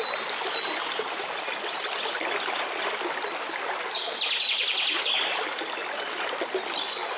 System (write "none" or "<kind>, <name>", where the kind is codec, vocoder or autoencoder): none